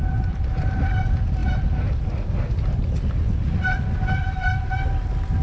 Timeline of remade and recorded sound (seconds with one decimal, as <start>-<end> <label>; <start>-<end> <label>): 0.0-5.4 recorded